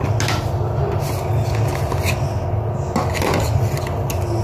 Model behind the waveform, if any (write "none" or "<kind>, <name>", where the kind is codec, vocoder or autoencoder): none